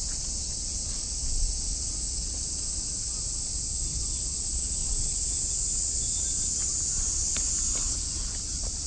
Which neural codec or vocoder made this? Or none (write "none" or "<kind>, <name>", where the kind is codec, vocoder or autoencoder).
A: none